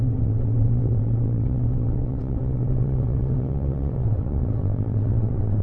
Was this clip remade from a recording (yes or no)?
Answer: yes